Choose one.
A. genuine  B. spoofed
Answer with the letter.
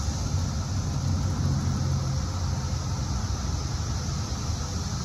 A